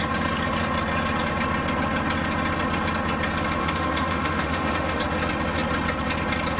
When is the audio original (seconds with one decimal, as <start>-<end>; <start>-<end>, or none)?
0.0-3.6; 5.0-6.6